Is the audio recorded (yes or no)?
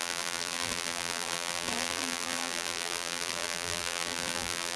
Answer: no